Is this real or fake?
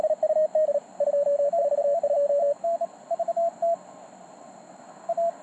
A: real